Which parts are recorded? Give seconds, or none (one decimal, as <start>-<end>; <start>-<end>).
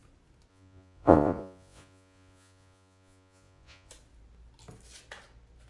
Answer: 0.0-0.5; 3.9-5.7